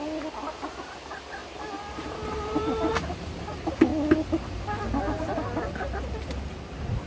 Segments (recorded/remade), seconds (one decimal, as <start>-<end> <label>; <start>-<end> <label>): 0.0-1.4 recorded; 1.4-2.9 remade; 2.9-7.1 recorded